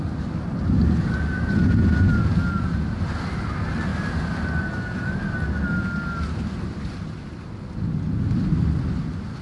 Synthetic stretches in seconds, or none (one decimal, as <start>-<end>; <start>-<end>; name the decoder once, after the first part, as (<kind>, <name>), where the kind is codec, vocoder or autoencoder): none